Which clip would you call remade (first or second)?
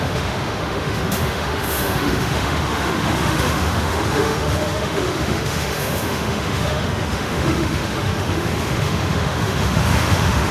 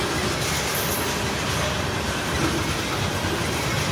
first